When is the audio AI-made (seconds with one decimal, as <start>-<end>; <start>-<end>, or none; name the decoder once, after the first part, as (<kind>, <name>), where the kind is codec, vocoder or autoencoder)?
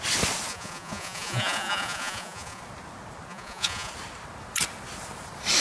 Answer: 0.5-2.6 (vocoder, Vocos); 3.3-3.9